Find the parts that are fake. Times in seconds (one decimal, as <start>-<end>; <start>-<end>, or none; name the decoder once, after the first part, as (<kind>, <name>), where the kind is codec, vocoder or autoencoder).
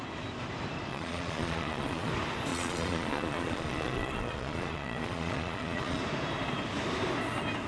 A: 0.9-2.1 (vocoder, Vocos); 2.5-6.0